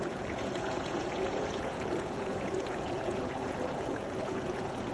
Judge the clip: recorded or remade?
remade